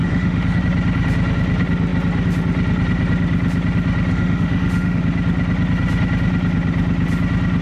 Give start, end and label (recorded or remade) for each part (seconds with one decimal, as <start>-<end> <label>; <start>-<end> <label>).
0.0-0.6 remade; 0.6-4.1 recorded; 4.1-5.0 remade; 5.0-7.6 recorded